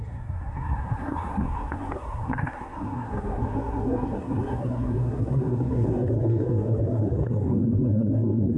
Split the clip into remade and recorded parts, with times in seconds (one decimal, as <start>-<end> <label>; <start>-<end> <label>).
0.0-8.6 remade